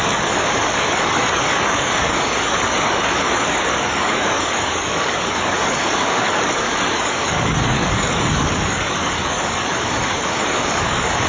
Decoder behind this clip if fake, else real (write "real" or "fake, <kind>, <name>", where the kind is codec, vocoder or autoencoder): fake, codec, DAC